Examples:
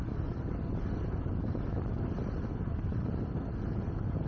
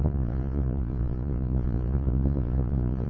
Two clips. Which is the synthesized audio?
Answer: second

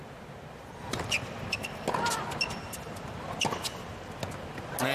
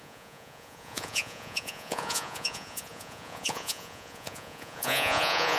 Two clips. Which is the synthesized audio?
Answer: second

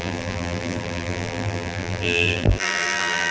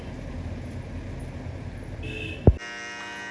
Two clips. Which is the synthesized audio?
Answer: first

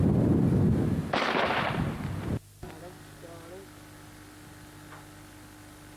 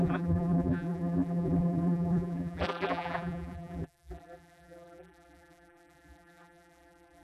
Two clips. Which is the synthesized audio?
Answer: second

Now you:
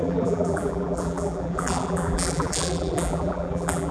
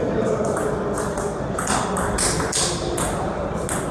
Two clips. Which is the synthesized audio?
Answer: first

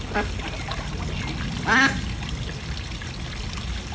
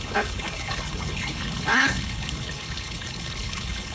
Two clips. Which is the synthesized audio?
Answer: second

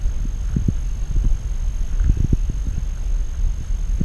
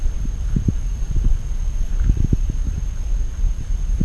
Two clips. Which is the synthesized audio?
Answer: second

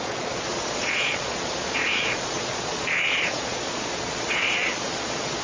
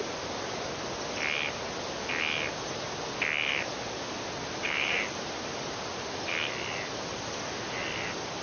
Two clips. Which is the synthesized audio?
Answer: first